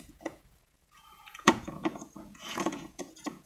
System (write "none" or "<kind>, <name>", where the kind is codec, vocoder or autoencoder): vocoder, Vocos